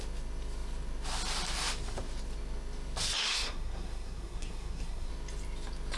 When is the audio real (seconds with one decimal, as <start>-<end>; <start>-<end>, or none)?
0.0-3.2; 5.1-6.0